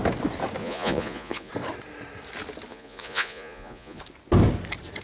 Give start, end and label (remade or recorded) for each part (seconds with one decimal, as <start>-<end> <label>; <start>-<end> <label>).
0.0-0.6 recorded; 0.6-1.5 remade; 1.5-2.7 recorded; 2.7-4.0 remade; 4.0-5.0 recorded

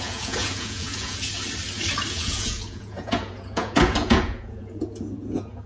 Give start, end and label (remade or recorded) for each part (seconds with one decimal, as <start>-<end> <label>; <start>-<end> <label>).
0.0-1.3 remade; 1.3-2.1 recorded; 2.1-5.7 remade

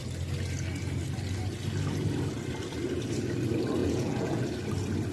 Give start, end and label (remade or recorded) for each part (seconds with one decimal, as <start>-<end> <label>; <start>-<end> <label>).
0.0-3.8 recorded; 3.8-4.4 remade; 4.4-5.1 recorded

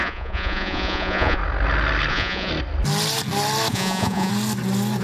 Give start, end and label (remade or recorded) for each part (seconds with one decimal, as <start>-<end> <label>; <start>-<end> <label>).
0.0-1.4 remade; 1.4-2.1 recorded; 2.1-2.5 remade; 2.5-3.7 recorded; 3.7-4.3 remade; 4.3-5.0 recorded

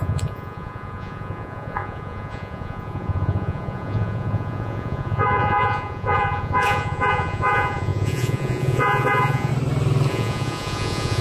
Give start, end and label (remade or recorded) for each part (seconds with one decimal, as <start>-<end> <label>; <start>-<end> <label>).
0.0-9.5 remade; 9.5-10.1 recorded; 10.1-11.2 remade

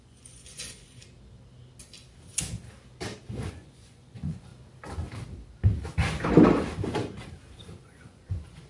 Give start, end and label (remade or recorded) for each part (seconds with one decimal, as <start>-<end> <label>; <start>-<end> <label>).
0.0-1.0 remade; 1.0-3.5 recorded; 3.5-4.5 remade; 4.5-7.8 recorded; 7.8-8.7 remade

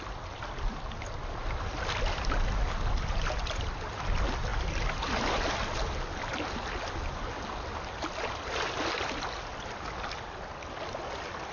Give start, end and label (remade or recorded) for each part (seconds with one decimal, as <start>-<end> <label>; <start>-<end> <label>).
0.0-11.5 recorded

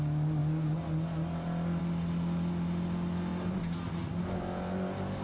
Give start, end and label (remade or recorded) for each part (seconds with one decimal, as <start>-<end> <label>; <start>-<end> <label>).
0.0-5.2 recorded